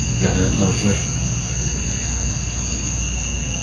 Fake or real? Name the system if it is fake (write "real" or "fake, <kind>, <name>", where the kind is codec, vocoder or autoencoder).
fake, codec, SNAC